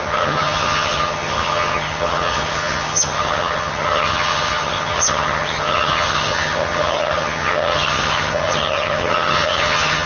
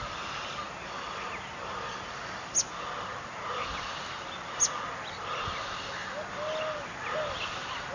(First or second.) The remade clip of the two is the first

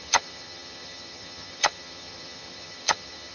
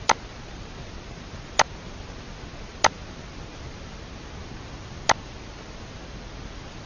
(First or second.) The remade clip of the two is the first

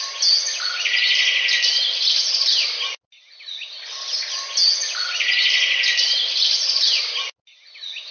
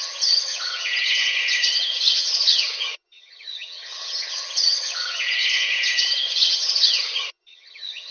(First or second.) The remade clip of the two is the second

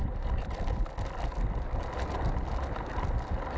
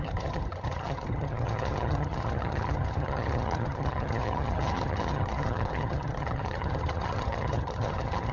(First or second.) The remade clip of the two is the second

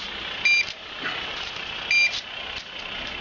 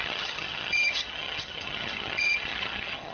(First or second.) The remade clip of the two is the second